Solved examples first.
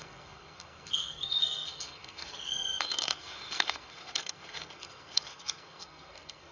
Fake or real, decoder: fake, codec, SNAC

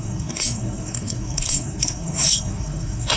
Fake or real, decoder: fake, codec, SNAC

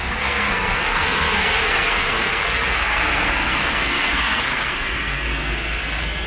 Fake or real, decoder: fake, codec, SNAC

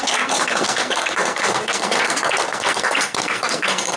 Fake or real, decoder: fake, codec, SNAC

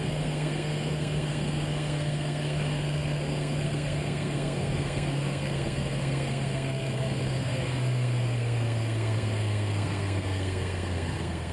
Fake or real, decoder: fake, codec, SNAC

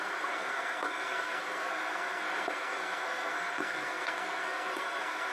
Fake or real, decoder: fake, codec, SNAC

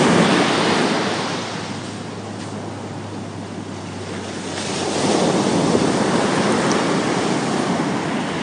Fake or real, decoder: real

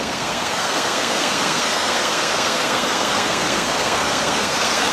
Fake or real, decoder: fake, codec, SNAC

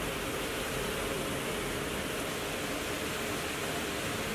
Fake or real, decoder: real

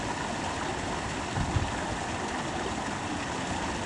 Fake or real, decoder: real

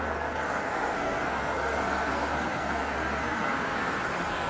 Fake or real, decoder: fake, codec, SNAC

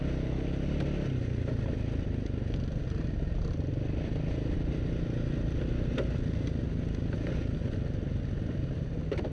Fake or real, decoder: real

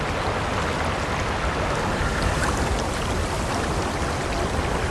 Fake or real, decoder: real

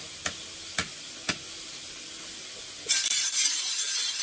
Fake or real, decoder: real